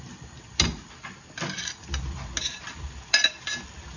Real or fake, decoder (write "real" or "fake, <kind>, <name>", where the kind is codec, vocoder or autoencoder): real